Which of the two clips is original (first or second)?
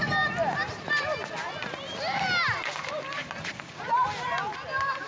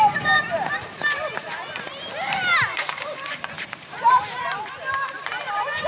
first